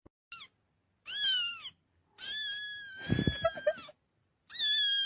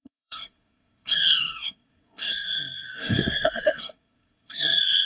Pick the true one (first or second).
first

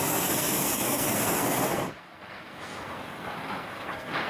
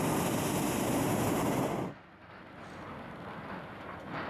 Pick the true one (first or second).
second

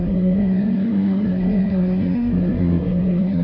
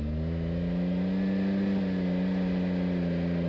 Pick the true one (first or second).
second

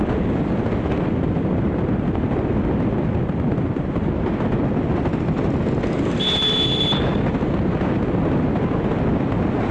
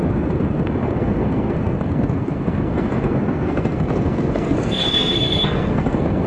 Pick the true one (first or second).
first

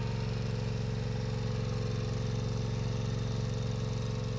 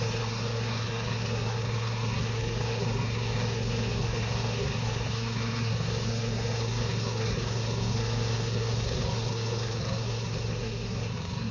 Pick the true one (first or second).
first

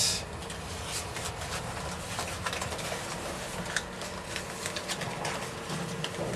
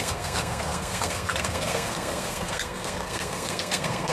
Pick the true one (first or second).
first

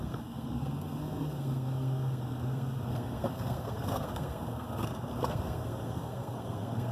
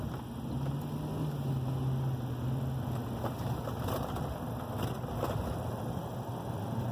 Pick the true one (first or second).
second